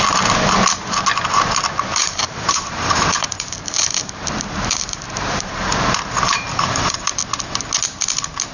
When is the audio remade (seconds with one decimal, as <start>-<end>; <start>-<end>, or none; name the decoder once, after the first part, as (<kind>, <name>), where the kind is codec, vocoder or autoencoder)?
2.0-7.1 (vocoder, BigVGAN v2)